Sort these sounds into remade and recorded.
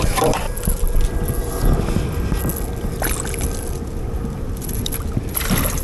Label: recorded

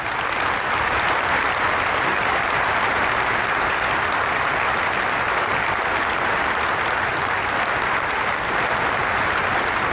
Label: recorded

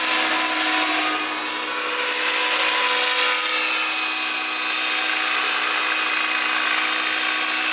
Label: recorded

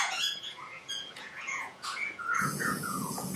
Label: remade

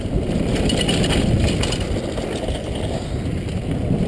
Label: recorded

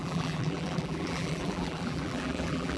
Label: remade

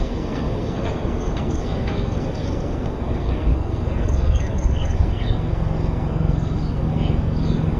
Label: remade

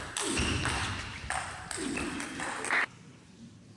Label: remade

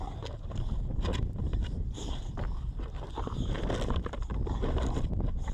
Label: recorded